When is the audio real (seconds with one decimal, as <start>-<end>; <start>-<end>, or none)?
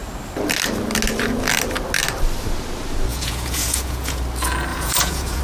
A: 0.0-3.1; 4.2-4.7